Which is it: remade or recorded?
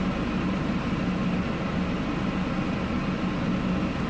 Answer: recorded